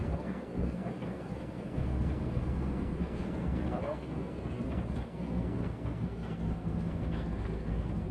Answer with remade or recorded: remade